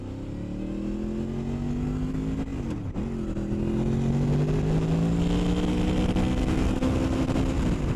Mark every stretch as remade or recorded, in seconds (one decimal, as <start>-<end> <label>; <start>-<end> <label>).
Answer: 0.0-6.4 recorded; 6.4-6.9 remade; 6.9-8.0 recorded